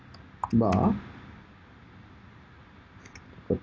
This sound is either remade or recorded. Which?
recorded